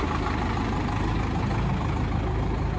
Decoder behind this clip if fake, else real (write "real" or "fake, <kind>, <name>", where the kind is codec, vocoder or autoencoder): real